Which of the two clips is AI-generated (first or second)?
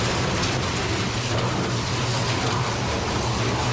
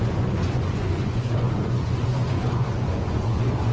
second